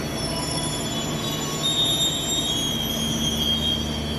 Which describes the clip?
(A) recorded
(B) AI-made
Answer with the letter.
A